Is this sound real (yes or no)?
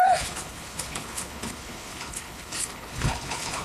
no